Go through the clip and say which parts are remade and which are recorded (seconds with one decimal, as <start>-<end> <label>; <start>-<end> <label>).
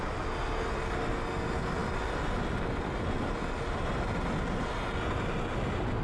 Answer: 0.0-6.0 recorded